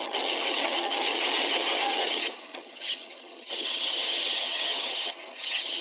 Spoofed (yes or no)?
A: yes